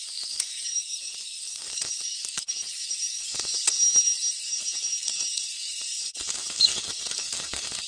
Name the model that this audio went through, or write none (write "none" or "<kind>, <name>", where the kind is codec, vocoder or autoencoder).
codec, DAC